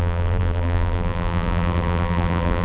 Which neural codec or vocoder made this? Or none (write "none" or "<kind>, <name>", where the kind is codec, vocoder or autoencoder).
vocoder, BigVGAN v2